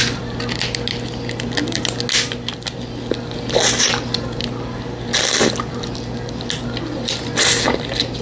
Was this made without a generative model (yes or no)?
yes